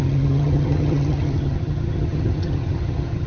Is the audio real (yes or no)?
no